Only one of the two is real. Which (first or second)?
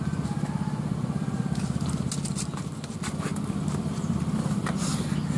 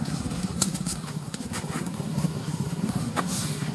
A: first